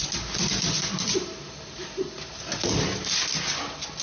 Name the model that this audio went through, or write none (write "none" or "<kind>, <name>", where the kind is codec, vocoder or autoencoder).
none